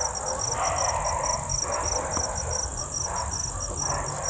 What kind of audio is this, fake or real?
real